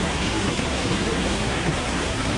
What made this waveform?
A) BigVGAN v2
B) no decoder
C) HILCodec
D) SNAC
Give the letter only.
D